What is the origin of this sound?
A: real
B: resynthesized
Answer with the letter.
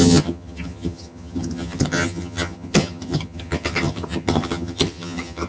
B